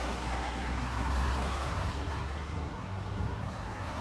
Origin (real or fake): fake